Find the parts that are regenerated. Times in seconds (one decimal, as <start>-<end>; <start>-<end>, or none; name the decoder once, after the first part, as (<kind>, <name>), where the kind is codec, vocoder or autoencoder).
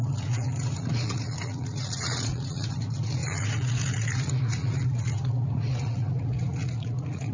0.0-7.3 (vocoder, Vocos)